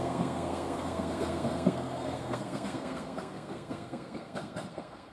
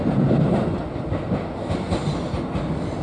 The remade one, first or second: first